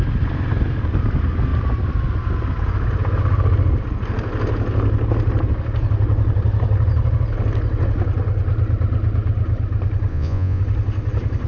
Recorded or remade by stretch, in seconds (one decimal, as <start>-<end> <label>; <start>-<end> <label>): 0.0-10.1 recorded; 10.1-10.6 remade; 10.6-11.5 recorded